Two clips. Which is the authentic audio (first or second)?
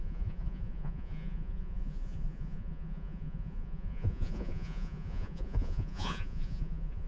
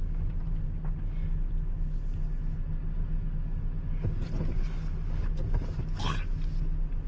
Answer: second